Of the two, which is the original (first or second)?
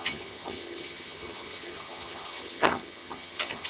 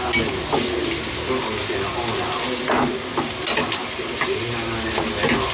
second